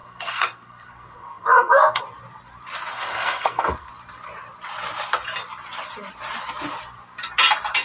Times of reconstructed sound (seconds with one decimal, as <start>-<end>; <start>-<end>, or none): 0.0-2.0; 2.9-3.9

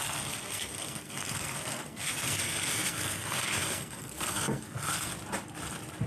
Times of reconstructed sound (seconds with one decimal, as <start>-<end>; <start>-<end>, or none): 0.0-5.1

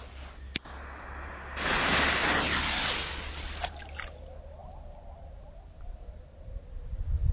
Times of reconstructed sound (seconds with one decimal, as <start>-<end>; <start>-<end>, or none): none

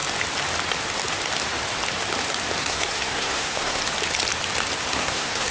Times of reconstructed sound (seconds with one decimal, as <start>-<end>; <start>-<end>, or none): 2.6-3.8; 4.9-5.5

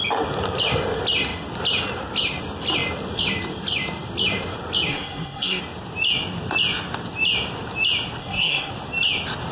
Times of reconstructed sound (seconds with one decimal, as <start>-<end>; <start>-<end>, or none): 4.9-5.6; 8.2-8.7